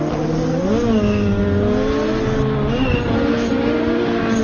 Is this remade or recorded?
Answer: recorded